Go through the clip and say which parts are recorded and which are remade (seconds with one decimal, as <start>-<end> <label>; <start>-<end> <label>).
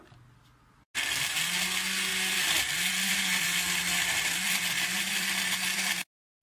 0.0-2.1 recorded; 2.1-5.9 remade; 5.9-6.4 recorded